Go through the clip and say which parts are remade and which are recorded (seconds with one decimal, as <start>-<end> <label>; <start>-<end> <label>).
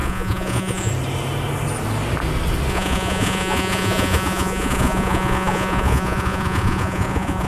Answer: 0.0-0.9 remade; 0.9-2.7 recorded; 2.7-7.5 remade